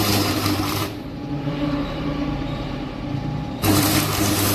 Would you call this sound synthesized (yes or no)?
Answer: yes